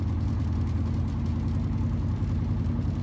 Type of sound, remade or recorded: recorded